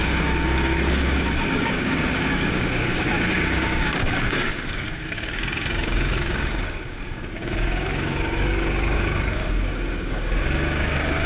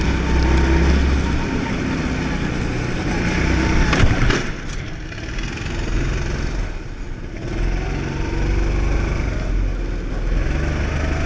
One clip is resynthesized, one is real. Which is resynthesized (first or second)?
first